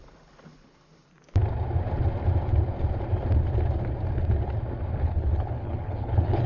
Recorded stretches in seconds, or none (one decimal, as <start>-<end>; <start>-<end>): 1.1-5.0